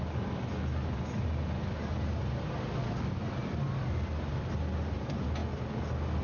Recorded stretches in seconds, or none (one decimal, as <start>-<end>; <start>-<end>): 0.0-6.2